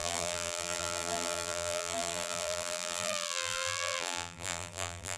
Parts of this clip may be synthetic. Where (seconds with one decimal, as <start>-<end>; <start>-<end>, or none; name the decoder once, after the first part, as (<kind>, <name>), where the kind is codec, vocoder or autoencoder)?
0.0-5.2 (vocoder, BigVGAN v2)